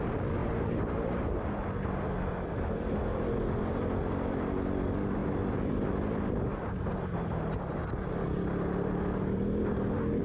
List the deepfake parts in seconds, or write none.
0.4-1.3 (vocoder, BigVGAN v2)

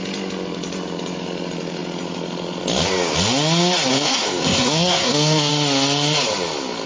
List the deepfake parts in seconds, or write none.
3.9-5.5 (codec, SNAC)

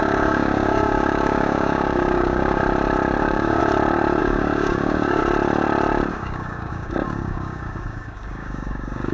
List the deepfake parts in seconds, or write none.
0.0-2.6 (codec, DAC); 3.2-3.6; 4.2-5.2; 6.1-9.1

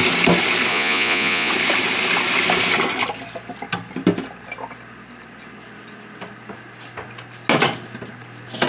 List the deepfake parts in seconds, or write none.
0.7-1.5 (vocoder, Vocos)

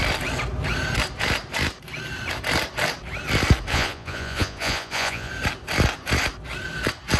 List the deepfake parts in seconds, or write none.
3.7-5.3 (vocoder, Vocos)

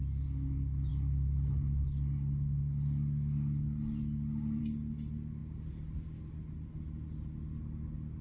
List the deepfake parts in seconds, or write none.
none

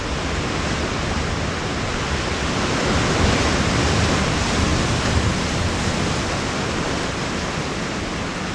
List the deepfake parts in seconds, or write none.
none